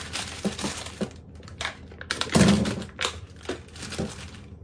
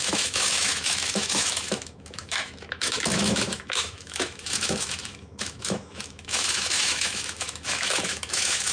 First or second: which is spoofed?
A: second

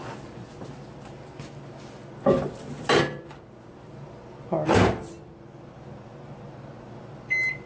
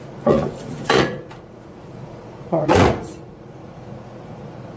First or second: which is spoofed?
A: second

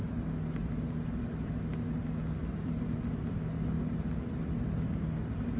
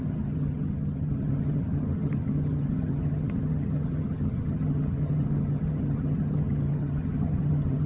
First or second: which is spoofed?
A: second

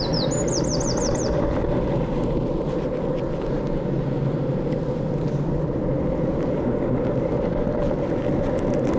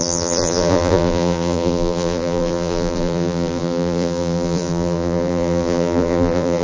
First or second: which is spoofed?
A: second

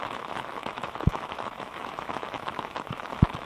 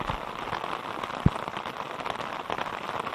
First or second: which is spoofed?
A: first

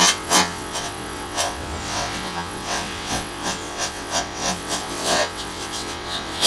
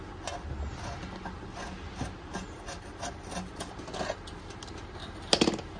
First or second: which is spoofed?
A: first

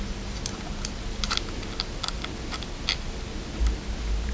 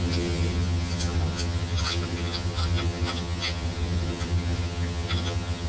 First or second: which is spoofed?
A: second